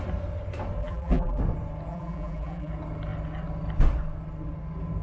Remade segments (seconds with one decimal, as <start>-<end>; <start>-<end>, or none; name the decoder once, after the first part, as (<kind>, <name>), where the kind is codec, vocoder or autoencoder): 0.8-1.4 (vocoder, BigVGAN v2); 1.9-2.7